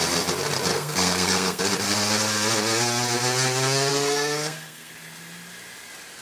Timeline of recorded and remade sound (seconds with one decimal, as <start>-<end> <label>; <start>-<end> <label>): 0.0-0.7 recorded; 0.7-1.6 remade; 1.6-3.9 recorded; 3.9-4.9 remade; 4.9-6.2 recorded